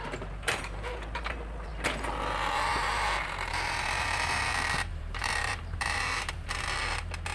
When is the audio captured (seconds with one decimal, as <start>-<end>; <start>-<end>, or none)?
0.0-3.5; 4.4-4.9; 6.5-7.3